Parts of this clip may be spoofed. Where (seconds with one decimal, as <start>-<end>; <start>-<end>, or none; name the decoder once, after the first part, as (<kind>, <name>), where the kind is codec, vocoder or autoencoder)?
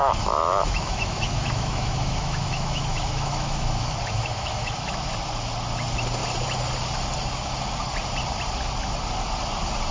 0.0-5.1 (autoencoder, DAC-VAE)